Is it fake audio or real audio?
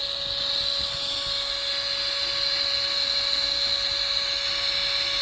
real